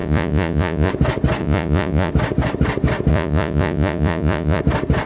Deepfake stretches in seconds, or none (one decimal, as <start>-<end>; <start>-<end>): 0.0-0.9; 1.4-2.1; 3.1-4.6